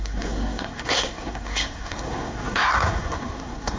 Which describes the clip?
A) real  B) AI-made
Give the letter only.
B